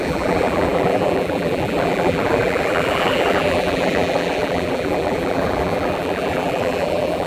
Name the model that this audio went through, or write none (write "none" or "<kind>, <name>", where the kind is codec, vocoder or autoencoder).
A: vocoder, BigVGAN v2